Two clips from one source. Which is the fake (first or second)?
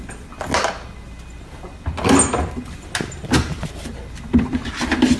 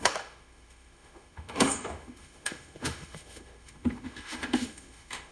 second